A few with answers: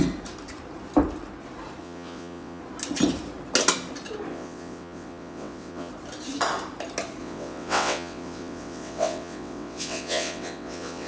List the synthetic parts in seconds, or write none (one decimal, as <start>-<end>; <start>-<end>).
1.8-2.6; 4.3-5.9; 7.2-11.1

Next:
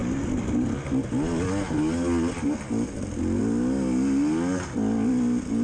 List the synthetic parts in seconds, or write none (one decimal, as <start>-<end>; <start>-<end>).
none

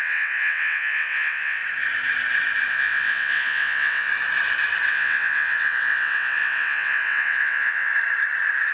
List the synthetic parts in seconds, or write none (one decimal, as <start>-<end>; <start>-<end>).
0.0-1.6; 2.7-4.1; 4.9-7.9

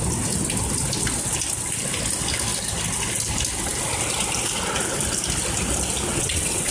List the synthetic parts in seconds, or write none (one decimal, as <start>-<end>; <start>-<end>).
6.1-6.7